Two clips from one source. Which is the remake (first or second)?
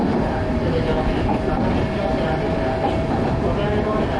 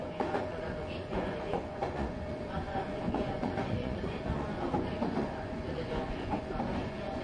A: second